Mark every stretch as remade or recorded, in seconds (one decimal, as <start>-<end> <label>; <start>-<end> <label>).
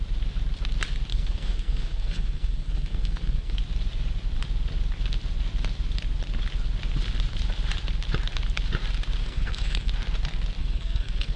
0.0-1.1 recorded; 1.1-3.6 remade; 3.6-9.2 recorded; 9.2-9.9 remade; 9.9-10.6 recorded; 10.6-11.4 remade